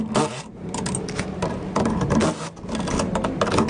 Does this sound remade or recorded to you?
recorded